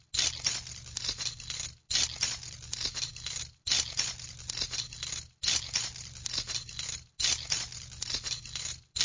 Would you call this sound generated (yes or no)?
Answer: no